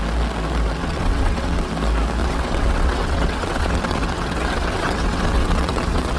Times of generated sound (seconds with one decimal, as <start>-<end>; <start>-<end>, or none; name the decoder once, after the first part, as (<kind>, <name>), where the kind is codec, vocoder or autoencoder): 0.8-1.7 (vocoder, WaveNeXt); 2.2-6.2